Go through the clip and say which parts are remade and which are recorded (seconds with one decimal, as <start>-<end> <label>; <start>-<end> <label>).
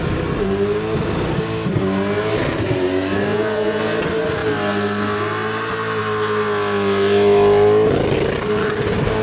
0.0-3.3 recorded; 3.3-3.8 remade; 3.8-9.2 recorded